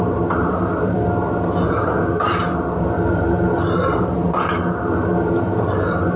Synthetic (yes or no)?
yes